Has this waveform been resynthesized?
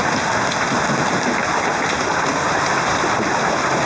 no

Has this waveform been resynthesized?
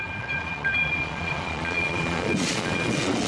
yes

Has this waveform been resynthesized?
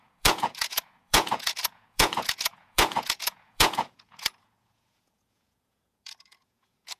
yes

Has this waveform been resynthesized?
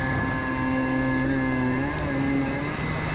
no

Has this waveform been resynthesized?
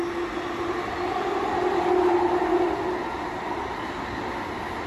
no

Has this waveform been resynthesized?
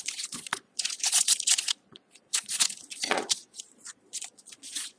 yes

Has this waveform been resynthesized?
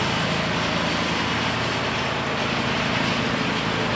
no